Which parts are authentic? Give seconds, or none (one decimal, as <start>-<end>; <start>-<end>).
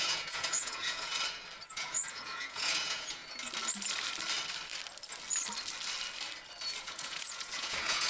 1.1-1.7; 3.2-6.8